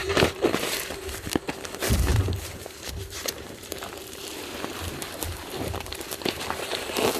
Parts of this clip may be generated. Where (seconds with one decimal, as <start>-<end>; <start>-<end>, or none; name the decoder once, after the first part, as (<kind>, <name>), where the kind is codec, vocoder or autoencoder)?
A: 0.0-0.9 (vocoder, BigVGAN v2); 2.1-6.4